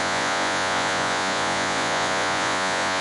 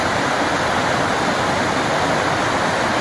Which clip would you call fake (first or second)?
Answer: first